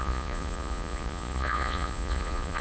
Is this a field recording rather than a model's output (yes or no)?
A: no